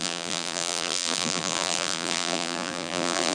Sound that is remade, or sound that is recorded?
remade